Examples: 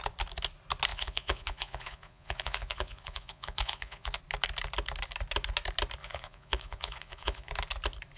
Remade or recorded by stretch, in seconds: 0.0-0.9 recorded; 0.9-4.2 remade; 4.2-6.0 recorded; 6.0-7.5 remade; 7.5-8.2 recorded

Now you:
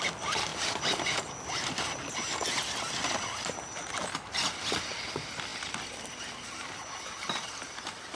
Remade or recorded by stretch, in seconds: 0.0-8.2 recorded

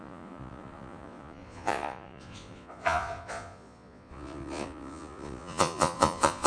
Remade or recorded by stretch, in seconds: 0.0-6.5 remade